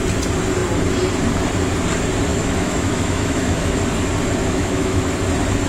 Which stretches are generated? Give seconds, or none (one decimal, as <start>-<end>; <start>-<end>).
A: 2.3-3.8; 4.4-5.0